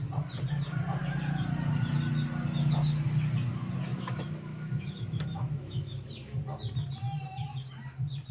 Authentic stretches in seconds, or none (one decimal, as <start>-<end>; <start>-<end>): 0.0-3.9; 6.1-8.3